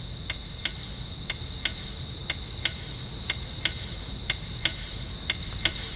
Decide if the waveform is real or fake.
real